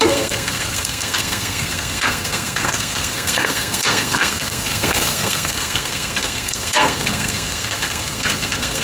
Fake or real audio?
fake